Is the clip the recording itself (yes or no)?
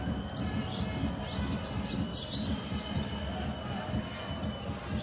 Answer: yes